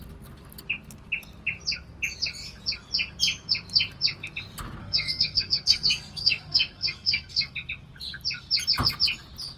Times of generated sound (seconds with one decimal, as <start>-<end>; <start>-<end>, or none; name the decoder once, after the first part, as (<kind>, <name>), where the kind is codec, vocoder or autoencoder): 4.8-7.5 (codec, SNAC)